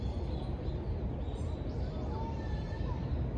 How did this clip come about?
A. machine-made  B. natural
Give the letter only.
B